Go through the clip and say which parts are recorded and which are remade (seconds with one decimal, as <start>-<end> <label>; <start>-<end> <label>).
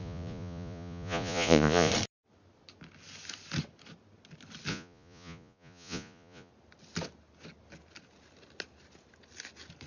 0.0-1.9 remade; 1.9-4.7 recorded; 4.7-6.5 remade; 6.5-9.9 recorded